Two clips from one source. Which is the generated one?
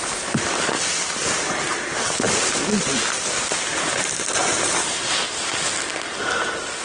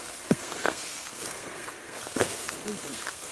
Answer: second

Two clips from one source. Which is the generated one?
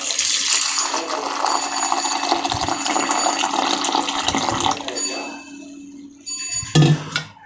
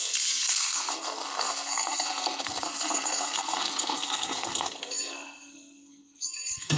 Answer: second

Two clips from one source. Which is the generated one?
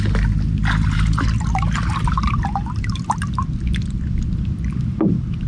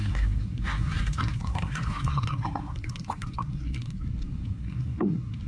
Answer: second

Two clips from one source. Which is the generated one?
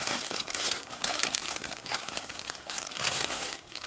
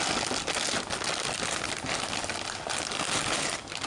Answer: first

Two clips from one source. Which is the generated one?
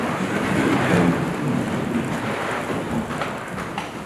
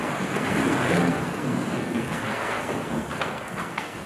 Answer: second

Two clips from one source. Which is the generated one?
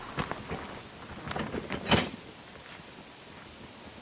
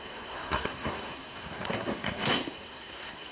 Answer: second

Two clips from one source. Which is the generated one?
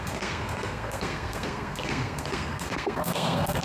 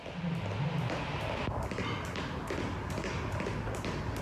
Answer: first